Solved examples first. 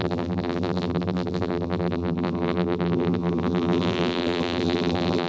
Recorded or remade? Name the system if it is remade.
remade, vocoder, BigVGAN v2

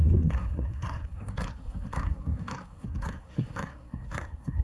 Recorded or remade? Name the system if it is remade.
remade, codec, SNAC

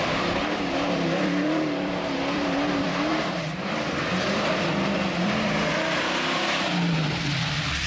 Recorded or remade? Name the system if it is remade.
remade, vocoder, BigVGAN v2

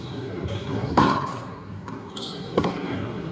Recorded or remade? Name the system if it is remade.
remade, codec, SNAC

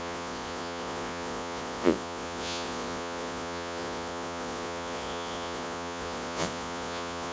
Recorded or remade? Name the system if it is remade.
remade, vocoder, Vocos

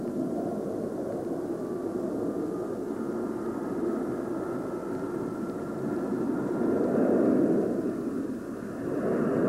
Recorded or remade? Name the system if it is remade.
recorded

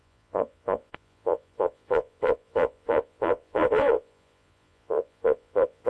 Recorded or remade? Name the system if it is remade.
remade, vocoder, Vocos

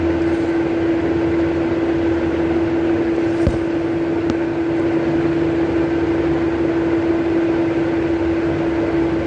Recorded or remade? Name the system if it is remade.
recorded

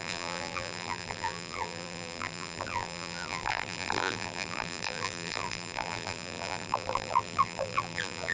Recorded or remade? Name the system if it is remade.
remade, vocoder, BigVGAN v2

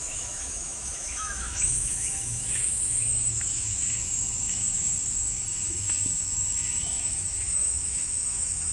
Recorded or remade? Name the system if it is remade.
remade, autoencoder, DAC-VAE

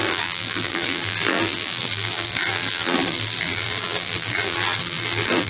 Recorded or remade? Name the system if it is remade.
remade, vocoder, BigVGAN v2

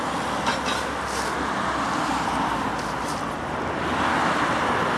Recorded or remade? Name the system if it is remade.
recorded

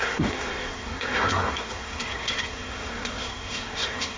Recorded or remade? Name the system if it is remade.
remade, codec, SNAC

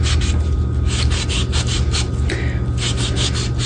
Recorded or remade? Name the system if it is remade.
recorded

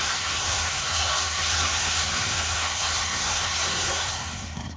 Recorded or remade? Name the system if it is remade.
remade, codec, SNAC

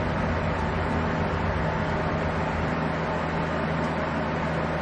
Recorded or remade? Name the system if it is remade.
recorded